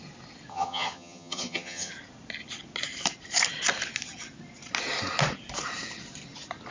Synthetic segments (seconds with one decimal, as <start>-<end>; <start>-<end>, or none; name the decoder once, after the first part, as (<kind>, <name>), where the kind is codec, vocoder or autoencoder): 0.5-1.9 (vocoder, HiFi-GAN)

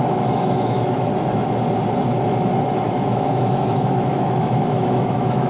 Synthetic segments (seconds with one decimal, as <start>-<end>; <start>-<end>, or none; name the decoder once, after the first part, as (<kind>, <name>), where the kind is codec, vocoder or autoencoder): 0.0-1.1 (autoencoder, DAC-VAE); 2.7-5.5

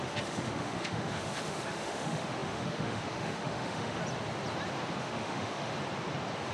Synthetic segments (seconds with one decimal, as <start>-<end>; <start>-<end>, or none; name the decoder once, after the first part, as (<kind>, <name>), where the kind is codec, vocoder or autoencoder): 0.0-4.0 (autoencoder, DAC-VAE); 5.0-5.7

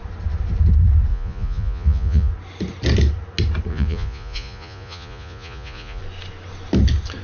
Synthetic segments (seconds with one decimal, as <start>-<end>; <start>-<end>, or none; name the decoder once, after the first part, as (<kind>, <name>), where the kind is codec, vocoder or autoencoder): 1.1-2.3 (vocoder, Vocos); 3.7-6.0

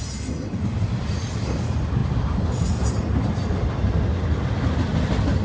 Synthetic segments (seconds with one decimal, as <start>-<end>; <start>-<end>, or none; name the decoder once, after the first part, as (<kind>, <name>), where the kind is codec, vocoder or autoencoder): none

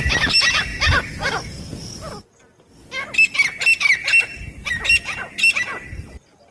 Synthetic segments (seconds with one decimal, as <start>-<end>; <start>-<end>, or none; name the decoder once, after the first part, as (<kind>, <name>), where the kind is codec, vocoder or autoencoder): none

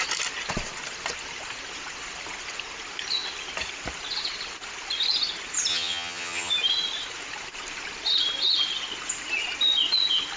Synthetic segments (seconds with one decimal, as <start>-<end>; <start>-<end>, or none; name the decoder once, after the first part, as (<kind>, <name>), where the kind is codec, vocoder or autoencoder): 5.7-6.5 (vocoder, HiFi-GAN)

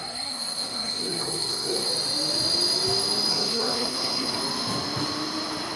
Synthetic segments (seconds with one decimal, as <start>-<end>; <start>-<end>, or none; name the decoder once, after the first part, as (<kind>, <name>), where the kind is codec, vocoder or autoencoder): 0.0-1.9 (codec, SNAC); 3.3-4.4